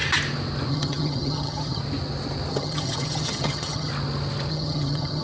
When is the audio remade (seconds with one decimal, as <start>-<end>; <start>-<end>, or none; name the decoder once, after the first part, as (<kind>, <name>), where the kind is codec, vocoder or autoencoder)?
0.7-1.8 (vocoder, HiFi-GAN); 2.5-3.9; 4.5-5.2